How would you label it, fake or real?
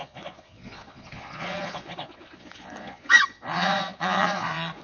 fake